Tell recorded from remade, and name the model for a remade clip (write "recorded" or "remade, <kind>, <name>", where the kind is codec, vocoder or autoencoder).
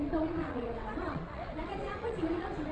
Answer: remade, vocoder, WaveNeXt